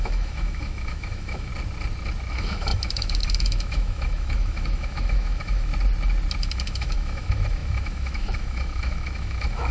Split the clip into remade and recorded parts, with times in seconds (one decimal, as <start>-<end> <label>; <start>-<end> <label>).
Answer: 0.0-1.5 remade; 1.5-2.3 recorded; 2.3-5.7 remade; 5.7-6.4 recorded; 6.4-9.7 remade